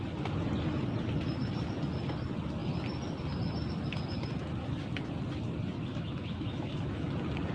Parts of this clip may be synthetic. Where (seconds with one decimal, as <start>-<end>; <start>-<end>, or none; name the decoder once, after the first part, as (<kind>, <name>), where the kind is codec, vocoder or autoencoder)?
5.9-7.1 (autoencoder, DAC-VAE)